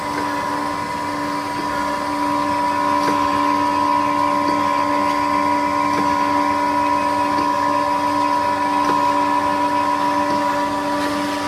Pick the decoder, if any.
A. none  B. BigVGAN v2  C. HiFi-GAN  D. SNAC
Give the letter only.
A